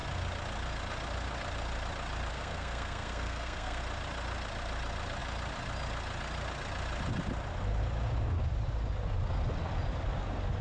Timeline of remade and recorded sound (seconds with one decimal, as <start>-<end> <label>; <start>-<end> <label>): 0.0-2.3 recorded; 2.3-3.8 remade; 3.8-10.6 recorded